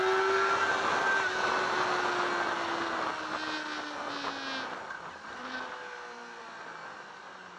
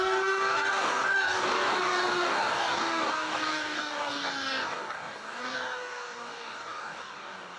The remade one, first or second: second